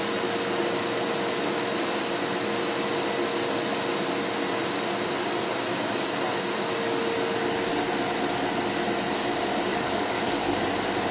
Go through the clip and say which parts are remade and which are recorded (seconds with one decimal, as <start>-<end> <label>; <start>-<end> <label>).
0.0-9.7 recorded; 9.7-10.6 remade; 10.6-11.1 recorded